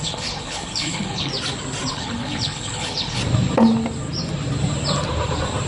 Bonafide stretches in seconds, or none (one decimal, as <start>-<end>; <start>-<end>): 1.3-1.9; 3.2-5.7